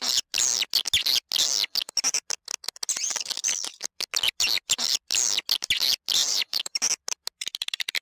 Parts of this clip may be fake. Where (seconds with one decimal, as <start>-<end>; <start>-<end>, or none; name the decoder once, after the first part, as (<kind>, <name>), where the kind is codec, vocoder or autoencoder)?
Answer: 6.2-6.9 (vocoder, BigVGAN v2)